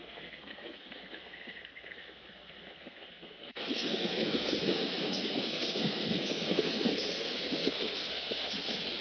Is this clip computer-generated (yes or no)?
yes